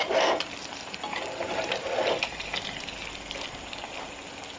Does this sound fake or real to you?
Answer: real